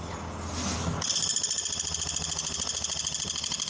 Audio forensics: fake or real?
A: real